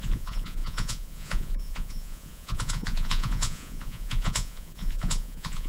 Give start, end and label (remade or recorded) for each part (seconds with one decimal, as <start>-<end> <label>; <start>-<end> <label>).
0.0-5.7 remade